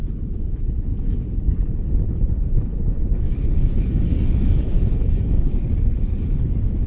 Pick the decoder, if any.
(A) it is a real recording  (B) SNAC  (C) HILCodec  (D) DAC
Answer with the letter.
C